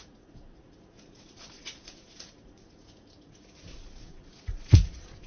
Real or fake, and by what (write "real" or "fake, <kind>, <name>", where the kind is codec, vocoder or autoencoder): fake, vocoder, Vocos